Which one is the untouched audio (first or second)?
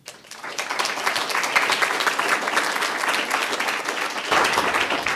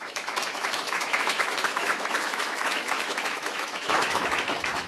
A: first